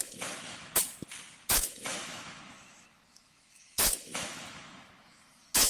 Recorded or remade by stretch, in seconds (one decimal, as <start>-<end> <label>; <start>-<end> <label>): 0.0-0.7 remade; 0.7-1.5 recorded; 1.5-5.7 remade